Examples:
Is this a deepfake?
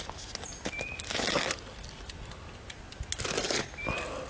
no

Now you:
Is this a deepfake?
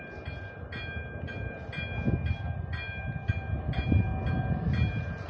no